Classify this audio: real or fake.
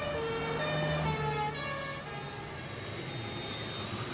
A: real